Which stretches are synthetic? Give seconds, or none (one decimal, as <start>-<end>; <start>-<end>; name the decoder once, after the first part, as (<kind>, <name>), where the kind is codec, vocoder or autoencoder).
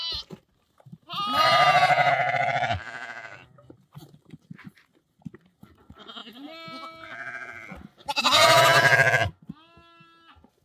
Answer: none